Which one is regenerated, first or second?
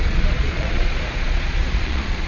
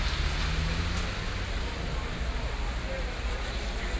first